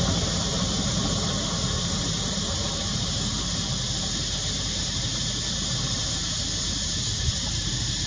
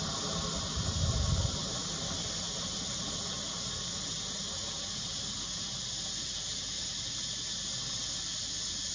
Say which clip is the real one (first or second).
second